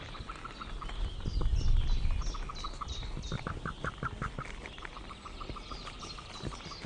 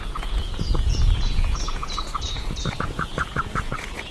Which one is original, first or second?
first